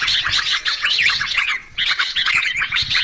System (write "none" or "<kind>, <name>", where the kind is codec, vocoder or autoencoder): vocoder, WaveNeXt